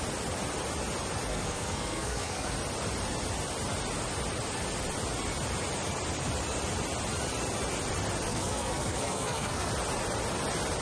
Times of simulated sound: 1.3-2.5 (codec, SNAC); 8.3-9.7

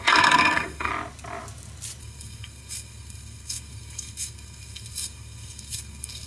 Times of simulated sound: 0.0-0.9 (codec, SNAC); 2.0-6.3

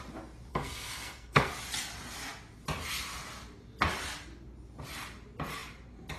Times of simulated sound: 0.5-1.5 (codec, SNAC)

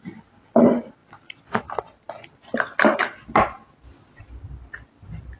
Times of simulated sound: none

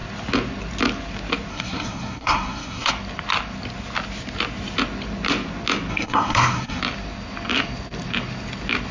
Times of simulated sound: 1.5-2.9 (codec, SNAC); 5.9-6.8

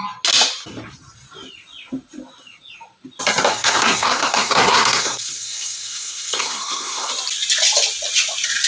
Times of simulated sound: 3.5-7.1 (codec, SNAC)